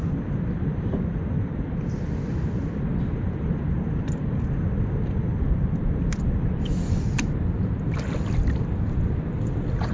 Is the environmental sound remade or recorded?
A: recorded